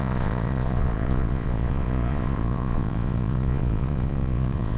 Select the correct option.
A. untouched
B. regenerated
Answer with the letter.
B